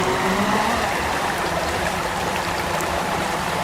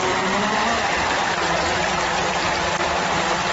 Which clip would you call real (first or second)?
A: second